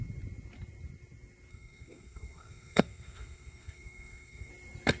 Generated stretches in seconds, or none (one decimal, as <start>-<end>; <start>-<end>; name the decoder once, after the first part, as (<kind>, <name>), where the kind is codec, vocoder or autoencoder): 1.5-4.5 (codec, SNAC)